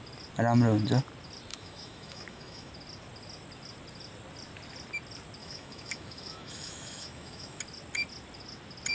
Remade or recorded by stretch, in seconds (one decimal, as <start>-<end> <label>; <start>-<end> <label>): 0.0-1.5 recorded; 1.5-2.7 remade; 2.7-5.4 recorded; 5.4-7.6 remade; 7.6-8.9 recorded